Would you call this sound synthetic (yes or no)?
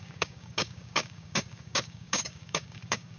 yes